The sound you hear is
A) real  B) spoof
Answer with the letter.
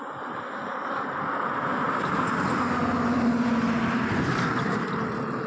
A